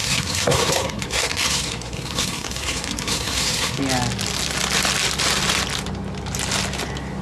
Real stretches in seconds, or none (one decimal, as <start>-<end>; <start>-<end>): 3.8-7.2